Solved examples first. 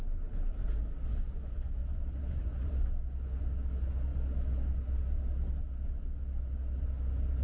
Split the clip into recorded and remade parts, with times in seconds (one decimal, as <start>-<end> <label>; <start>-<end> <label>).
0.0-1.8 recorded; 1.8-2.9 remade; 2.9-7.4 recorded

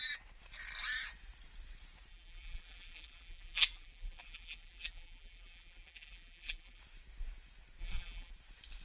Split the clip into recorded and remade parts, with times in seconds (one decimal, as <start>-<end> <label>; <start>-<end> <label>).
0.0-2.1 recorded; 2.1-6.8 remade; 6.8-7.8 recorded; 7.8-8.3 remade; 8.3-8.8 recorded

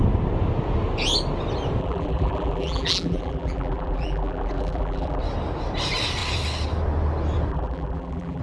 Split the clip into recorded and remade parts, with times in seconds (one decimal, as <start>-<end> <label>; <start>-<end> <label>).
0.0-1.8 recorded; 1.8-5.2 remade; 5.2-7.5 recorded; 7.5-8.4 remade